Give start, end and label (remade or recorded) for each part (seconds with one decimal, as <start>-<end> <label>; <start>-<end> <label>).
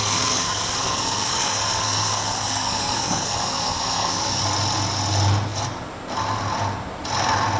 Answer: 0.0-4.4 remade; 4.4-7.6 recorded